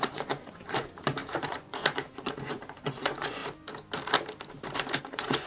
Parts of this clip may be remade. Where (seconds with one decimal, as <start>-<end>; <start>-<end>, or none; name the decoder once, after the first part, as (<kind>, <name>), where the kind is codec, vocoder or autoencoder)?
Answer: 0.0-3.4 (vocoder, Vocos); 5.0-5.5